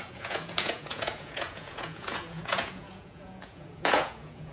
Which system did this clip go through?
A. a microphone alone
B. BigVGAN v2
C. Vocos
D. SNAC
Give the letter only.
C